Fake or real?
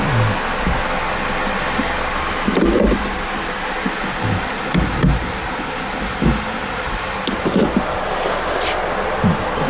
real